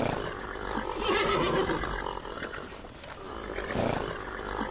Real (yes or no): yes